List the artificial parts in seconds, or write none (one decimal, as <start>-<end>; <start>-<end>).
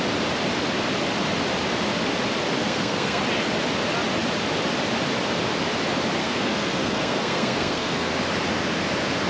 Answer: 2.6-3.2; 6.2-8.1